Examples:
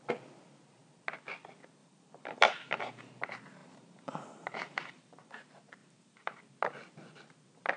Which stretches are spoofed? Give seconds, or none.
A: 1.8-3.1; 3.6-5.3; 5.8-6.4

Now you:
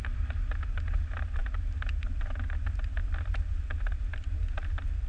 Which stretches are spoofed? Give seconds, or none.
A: none

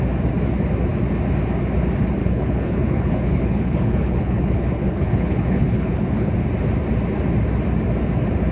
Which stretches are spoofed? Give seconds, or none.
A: 2.2-6.3

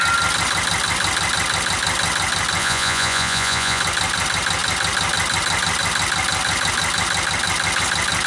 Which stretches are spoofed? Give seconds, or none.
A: 2.6-3.8